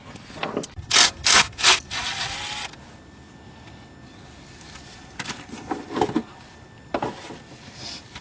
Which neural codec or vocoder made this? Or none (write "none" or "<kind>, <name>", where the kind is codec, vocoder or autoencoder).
none